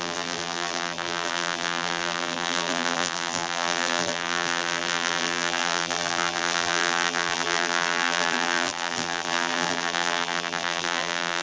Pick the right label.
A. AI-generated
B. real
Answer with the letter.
A